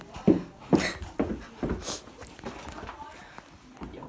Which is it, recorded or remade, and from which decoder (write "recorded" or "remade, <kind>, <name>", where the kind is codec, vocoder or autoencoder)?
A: recorded